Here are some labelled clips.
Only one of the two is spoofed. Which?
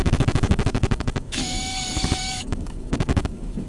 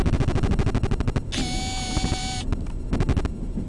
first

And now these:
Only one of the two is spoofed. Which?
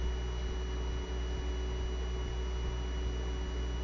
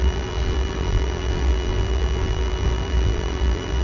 second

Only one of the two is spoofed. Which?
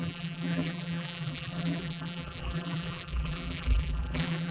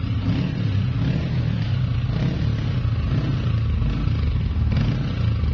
first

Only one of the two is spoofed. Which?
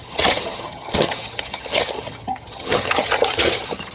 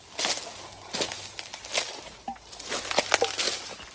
first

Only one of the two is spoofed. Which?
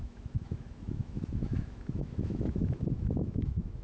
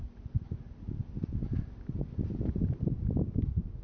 first